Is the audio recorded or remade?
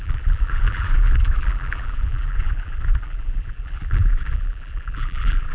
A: remade